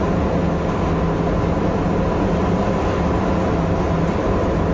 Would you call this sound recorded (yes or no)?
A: yes